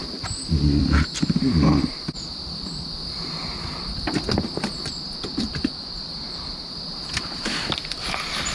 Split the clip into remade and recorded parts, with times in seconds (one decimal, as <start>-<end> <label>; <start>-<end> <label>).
0.0-8.5 recorded